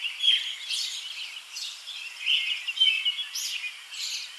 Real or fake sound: real